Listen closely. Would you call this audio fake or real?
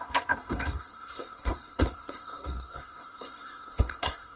fake